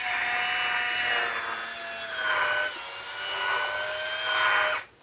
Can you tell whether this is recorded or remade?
recorded